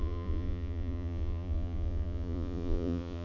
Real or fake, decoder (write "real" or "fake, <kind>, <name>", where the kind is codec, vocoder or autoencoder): fake, vocoder, Vocos